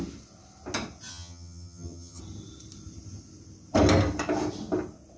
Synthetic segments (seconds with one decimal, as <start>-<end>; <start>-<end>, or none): 1.1-2.2